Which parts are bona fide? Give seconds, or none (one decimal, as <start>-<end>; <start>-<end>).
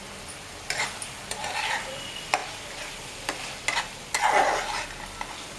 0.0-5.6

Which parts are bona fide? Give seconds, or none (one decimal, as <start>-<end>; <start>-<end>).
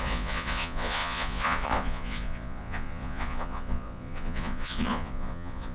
none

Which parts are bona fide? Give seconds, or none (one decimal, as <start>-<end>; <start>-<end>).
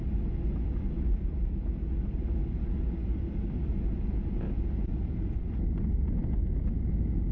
0.0-3.0; 5.2-7.3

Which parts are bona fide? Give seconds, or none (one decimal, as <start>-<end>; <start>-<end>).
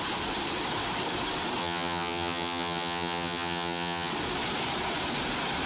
0.0-1.6; 4.1-5.7